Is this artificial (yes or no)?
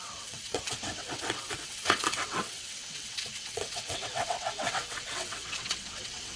yes